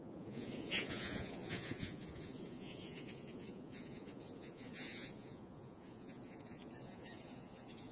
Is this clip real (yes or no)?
no